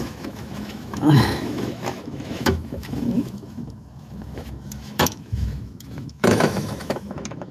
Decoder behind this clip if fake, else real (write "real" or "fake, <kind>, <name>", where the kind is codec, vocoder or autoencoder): fake, autoencoder, DAC-VAE